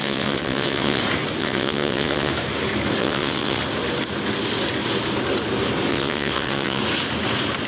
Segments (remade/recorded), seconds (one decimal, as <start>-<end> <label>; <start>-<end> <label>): 0.0-1.0 remade; 1.0-1.4 recorded; 1.4-2.3 remade; 2.3-3.0 recorded; 3.0-3.6 remade; 3.6-5.9 recorded; 5.9-6.8 remade; 6.8-7.7 recorded